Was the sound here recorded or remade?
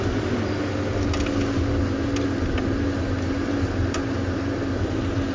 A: recorded